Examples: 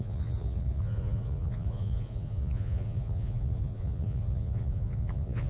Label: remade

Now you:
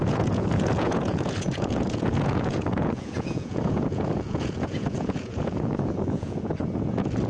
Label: remade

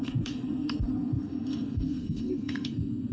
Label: remade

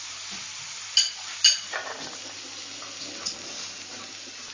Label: recorded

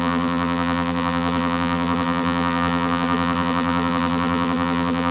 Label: remade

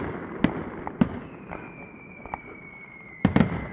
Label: recorded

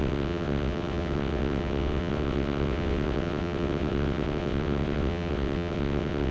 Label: remade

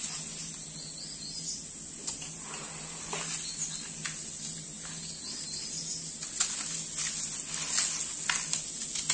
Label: recorded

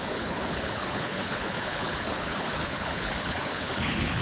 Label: remade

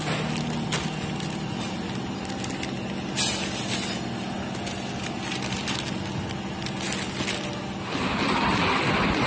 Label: recorded